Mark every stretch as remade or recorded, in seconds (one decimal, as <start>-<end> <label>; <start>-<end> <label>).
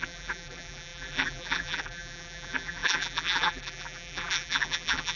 0.0-5.2 remade